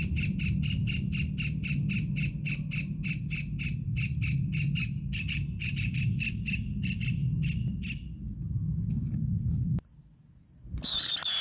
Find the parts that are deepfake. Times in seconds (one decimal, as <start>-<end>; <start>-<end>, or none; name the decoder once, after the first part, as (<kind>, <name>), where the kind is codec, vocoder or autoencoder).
9.5-10.2 (vocoder, BigVGAN v2)

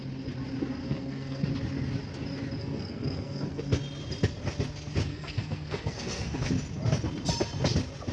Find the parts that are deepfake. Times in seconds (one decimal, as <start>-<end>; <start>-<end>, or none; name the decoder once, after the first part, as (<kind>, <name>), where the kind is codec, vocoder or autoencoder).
0.8-1.5 (codec, SNAC); 2.6-3.6; 5.1-6.5

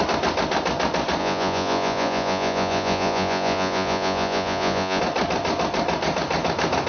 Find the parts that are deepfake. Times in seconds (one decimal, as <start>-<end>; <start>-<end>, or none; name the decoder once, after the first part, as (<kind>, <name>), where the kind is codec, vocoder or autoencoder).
1.2-5.0 (vocoder, Vocos)